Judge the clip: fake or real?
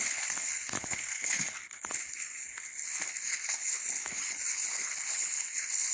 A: fake